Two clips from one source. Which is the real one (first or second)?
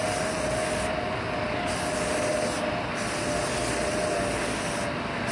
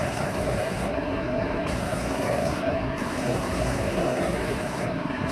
first